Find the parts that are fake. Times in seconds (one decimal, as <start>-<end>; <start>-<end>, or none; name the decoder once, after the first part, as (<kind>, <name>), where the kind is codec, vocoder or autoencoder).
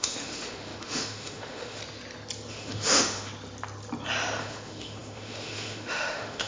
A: 0.0-1.8 (autoencoder, DAC-VAE); 2.5-3.3; 4.4-6.5